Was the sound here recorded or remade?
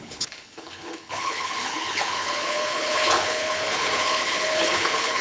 remade